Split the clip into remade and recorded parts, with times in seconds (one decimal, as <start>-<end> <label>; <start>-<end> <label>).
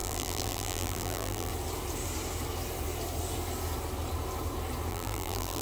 0.0-1.5 remade; 1.5-4.9 recorded; 4.9-5.6 remade